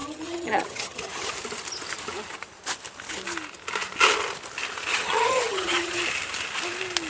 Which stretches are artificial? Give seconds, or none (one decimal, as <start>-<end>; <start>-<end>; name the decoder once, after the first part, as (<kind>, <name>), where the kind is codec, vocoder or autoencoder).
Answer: 0.0-1.3 (vocoder, HiFi-GAN); 4.9-6.0